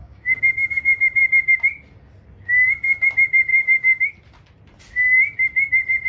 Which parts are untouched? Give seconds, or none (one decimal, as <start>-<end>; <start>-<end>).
0.7-3.5; 4.1-6.1